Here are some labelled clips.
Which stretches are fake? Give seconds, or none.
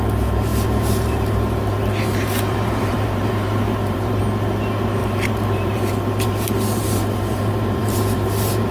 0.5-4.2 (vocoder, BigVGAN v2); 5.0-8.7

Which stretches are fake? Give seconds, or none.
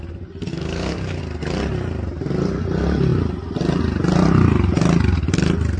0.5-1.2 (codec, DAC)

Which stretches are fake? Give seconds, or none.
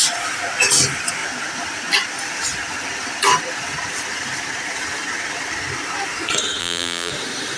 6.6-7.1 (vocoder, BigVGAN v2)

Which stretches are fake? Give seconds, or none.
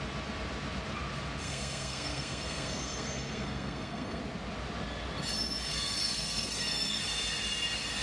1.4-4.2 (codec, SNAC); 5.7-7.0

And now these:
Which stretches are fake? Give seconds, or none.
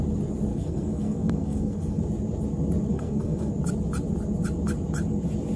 0.5-2.0 (codec, SNAC); 2.9-3.5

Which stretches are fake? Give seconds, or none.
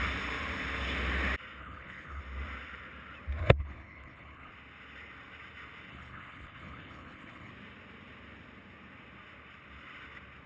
1.6-2.2 (codec, HILCodec); 3.4-4.5; 5.9-7.5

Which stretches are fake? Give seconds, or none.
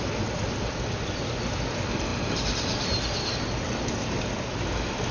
none